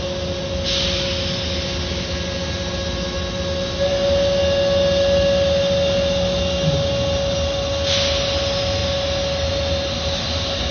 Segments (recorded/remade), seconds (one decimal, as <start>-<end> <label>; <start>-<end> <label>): 0.0-10.7 recorded